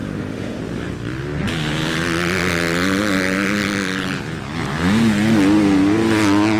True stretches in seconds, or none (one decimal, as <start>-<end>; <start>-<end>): 0.6-6.6